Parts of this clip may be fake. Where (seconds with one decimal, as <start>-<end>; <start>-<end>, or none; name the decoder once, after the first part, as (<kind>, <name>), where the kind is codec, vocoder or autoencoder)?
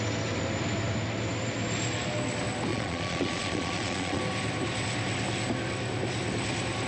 2.7-4.2 (vocoder, Vocos)